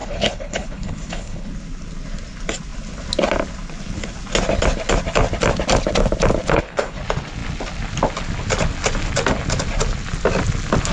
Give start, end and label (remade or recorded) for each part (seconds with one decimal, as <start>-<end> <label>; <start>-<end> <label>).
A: 0.0-1.5 remade; 1.5-6.5 recorded; 6.5-7.0 remade; 7.0-10.9 recorded